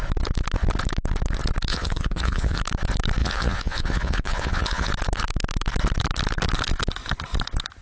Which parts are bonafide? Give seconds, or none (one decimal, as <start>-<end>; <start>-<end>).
0.0-1.7; 2.6-3.2; 4.9-7.8